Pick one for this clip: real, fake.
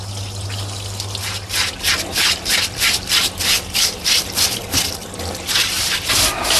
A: real